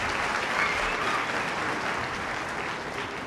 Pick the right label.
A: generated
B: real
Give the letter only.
B